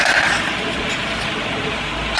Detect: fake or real real